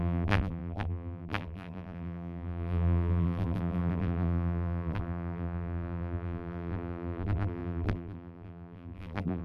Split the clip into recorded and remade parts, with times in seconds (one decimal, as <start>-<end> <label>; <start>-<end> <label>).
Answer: 0.0-9.4 remade